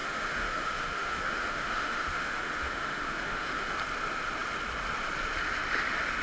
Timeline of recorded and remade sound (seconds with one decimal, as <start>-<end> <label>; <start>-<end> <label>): 0.0-3.7 remade; 3.7-6.2 recorded